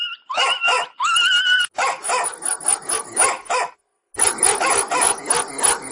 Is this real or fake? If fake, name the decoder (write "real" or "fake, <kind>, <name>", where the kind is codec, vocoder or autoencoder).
real